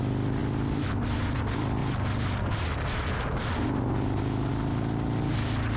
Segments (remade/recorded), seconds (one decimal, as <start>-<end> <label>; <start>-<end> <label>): 0.0-5.8 recorded